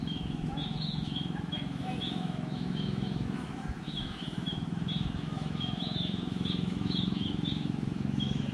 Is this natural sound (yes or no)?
no